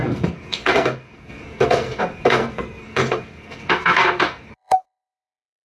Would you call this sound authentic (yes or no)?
no